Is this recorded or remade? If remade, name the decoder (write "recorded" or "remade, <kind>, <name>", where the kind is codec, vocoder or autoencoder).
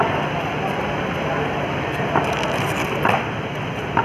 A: recorded